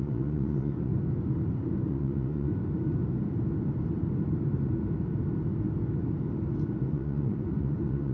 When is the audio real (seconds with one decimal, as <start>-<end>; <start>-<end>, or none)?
0.9-1.9; 2.5-6.9